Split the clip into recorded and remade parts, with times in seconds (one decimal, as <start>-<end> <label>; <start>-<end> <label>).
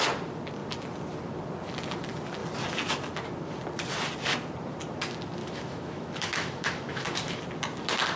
0.0-5.4 recorded; 5.4-7.4 remade; 7.4-8.2 recorded